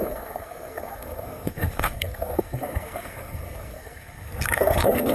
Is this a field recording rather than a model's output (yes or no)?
no